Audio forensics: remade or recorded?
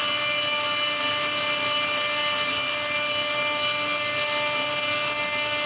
recorded